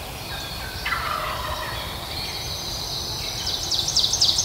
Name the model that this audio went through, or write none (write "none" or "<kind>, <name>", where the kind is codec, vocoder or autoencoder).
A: vocoder, BigVGAN v2